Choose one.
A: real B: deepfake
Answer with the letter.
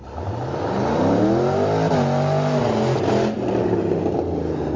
A